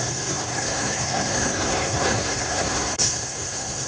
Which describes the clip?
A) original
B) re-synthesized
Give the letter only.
B